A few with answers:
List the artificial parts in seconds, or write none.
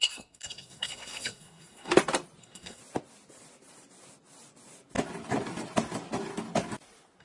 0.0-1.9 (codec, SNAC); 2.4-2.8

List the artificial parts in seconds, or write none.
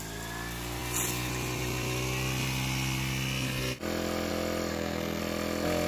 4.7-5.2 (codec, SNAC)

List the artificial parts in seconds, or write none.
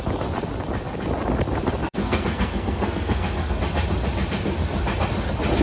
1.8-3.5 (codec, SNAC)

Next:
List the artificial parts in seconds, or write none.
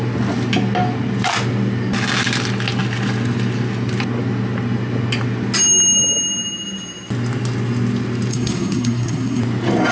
8.3-9.4 (codec, SNAC)